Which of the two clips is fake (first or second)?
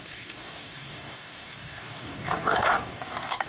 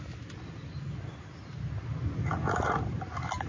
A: first